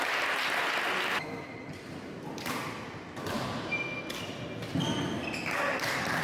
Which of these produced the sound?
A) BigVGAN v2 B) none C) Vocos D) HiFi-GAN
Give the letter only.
B